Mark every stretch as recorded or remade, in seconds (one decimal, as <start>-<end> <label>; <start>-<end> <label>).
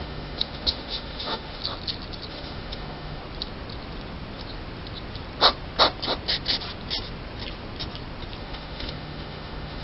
0.0-1.6 remade; 1.6-2.3 recorded; 2.3-3.2 remade; 3.2-8.4 recorded; 8.4-9.8 remade